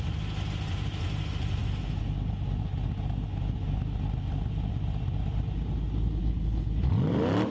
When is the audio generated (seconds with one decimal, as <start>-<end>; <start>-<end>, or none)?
6.2-6.9